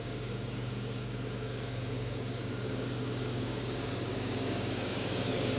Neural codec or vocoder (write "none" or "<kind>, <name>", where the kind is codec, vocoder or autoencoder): codec, DAC